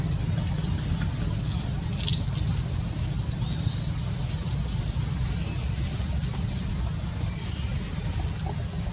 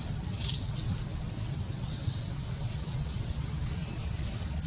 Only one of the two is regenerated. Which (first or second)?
second